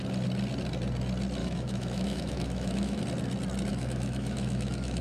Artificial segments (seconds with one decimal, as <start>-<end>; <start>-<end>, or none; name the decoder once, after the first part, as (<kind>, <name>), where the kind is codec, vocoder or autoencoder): 1.4-3.0 (autoencoder, DAC-VAE); 3.7-5.0